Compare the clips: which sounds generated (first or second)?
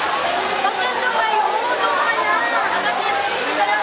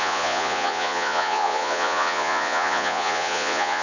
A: second